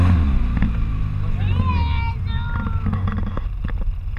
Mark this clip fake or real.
real